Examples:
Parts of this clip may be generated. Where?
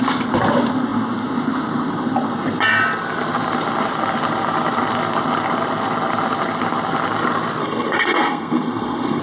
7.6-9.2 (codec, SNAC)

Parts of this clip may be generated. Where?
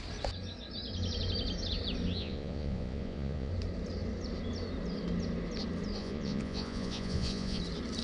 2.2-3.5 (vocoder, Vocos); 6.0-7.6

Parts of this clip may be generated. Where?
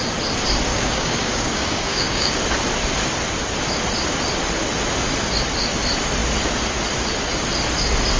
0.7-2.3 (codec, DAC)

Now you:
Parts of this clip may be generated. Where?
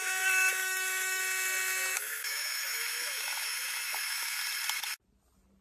0.6-1.2 (autoencoder, DAC-VAE); 1.9-4.4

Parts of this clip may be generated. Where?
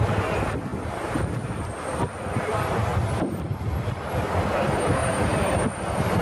0.7-1.6 (vocoder, BigVGAN v2); 2.5-3.0; 5.0-5.6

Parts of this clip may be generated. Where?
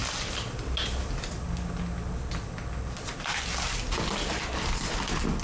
none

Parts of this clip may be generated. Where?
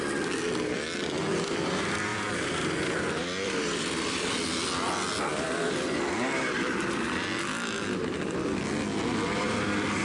2.1-4.3 (vocoder, BigVGAN v2); 5.3-6.1